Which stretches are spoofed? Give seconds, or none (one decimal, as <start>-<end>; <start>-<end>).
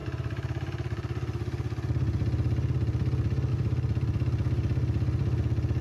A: none